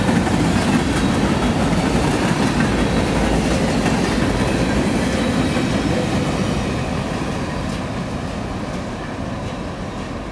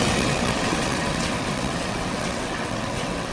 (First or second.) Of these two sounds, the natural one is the first